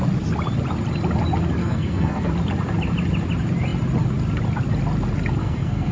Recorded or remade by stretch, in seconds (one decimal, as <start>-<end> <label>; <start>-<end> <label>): 0.0-1.6 recorded; 1.6-2.3 remade; 2.3-5.4 recorded; 5.4-5.9 remade